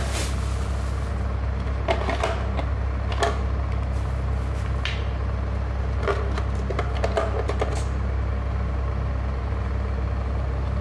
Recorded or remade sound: recorded